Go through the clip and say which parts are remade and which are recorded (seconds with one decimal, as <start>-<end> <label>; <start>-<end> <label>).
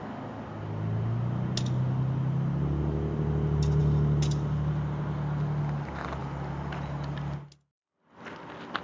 0.0-8.8 recorded